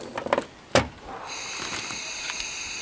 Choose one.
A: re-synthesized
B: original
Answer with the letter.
B